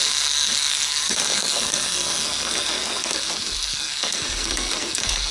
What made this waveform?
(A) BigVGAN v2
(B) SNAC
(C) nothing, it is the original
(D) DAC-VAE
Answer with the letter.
B